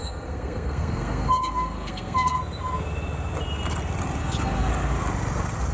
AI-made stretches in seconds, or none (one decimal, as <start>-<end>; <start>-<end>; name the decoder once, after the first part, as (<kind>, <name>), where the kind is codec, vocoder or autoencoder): 0.0-2.4 (codec, SNAC); 4.2-4.7